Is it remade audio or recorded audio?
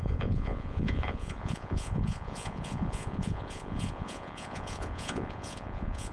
remade